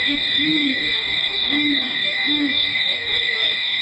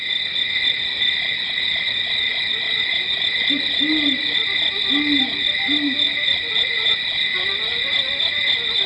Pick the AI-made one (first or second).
first